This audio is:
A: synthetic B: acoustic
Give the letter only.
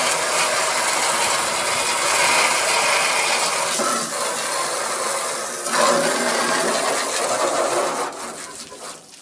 B